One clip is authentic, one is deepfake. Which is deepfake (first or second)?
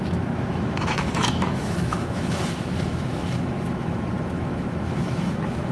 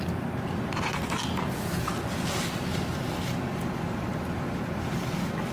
first